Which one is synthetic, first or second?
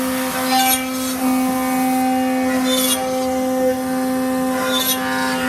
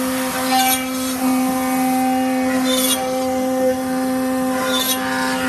second